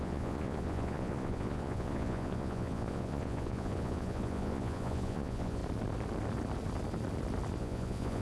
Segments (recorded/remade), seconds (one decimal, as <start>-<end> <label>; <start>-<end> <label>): 0.0-5.6 remade; 5.6-7.6 recorded; 7.6-8.2 remade